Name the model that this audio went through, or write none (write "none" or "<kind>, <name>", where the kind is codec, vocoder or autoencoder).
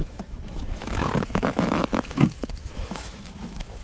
autoencoder, DAC-VAE